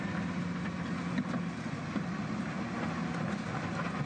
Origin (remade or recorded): recorded